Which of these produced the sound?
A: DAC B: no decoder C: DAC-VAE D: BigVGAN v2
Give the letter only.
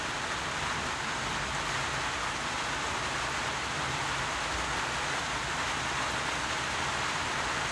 B